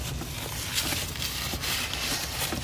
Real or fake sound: real